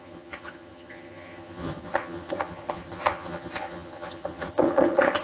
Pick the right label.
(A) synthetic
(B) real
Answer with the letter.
A